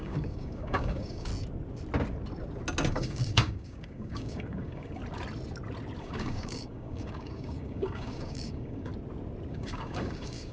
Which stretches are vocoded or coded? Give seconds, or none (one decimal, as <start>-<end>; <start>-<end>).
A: 0.0-1.3; 2.9-5.0; 6.0-8.9; 9.5-10.5